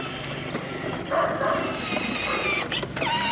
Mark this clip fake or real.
real